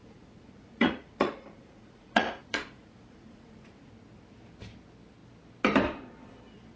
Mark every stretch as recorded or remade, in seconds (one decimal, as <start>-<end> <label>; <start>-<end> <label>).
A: 0.0-3.9 remade; 3.9-6.8 recorded